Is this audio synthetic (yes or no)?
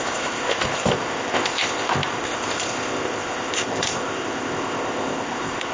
yes